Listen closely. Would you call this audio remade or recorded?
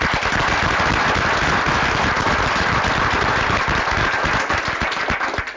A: recorded